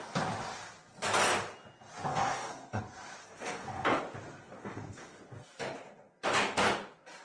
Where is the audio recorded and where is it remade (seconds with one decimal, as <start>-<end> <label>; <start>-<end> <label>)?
0.0-2.1 recorded; 2.1-2.8 remade; 2.8-3.2 recorded; 3.2-4.0 remade; 4.0-4.6 recorded; 4.6-5.2 remade; 5.2-7.2 recorded